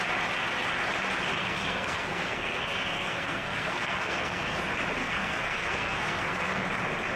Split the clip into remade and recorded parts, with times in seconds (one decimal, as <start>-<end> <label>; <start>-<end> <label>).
0.0-1.4 recorded; 1.4-4.6 remade; 4.6-5.0 recorded; 5.0-6.6 remade; 6.6-7.2 recorded